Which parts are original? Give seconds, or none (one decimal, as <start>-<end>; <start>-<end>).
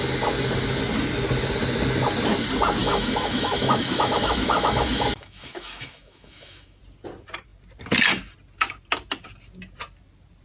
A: 0.0-2.8; 6.8-10.4